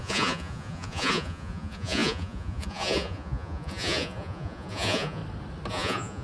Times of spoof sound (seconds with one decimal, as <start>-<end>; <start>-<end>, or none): 0.0-5.2; 5.7-6.2